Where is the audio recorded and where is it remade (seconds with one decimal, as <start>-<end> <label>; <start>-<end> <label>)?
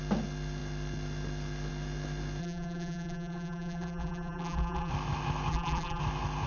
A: 0.0-2.4 recorded; 2.4-4.9 remade; 4.9-5.5 recorded; 5.5-6.0 remade; 6.0-6.5 recorded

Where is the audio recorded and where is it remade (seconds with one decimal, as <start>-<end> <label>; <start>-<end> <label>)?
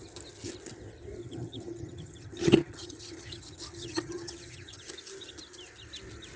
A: 0.0-1.2 recorded; 1.2-4.8 remade; 4.8-6.4 recorded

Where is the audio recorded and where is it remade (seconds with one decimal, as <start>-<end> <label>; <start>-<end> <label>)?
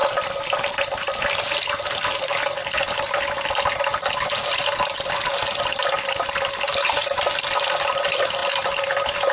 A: 0.0-9.3 recorded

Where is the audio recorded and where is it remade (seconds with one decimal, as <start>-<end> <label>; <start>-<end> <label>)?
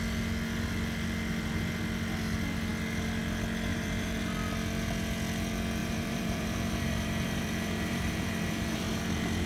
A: 0.0-3.7 recorded; 3.7-4.3 remade; 4.3-5.8 recorded; 5.8-9.0 remade; 9.0-9.5 recorded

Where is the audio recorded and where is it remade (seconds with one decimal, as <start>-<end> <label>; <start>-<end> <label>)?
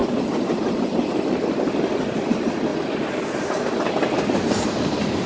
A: 0.0-2.3 recorded; 2.3-2.7 remade; 2.7-3.8 recorded; 3.8-5.3 remade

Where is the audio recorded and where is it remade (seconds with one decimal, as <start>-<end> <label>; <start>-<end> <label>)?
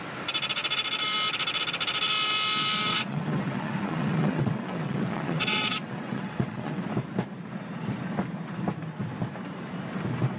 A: 0.0-2.9 recorded; 2.9-6.8 remade; 6.8-10.4 recorded